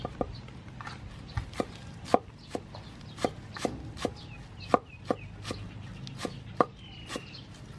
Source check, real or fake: real